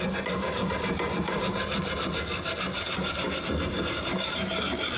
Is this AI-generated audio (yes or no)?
no